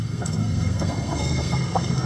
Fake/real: fake